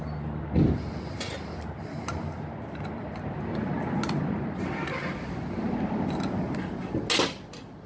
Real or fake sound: real